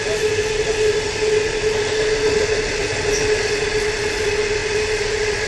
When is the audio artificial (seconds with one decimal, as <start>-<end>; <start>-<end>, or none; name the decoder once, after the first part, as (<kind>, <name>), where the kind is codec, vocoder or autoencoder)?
none